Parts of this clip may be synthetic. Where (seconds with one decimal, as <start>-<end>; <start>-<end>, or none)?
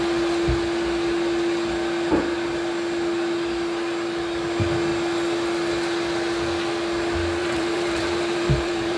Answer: 7.4-9.0